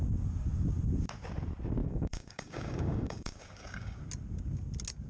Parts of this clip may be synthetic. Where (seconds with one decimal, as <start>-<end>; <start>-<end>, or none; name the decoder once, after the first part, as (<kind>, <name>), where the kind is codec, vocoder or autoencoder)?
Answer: 1.8-4.0 (codec, DAC)